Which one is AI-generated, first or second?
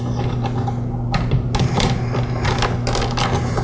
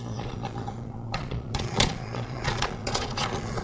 second